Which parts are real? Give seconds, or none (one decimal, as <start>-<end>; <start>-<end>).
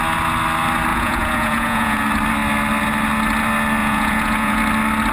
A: 0.0-0.9; 2.0-3.8; 4.6-5.1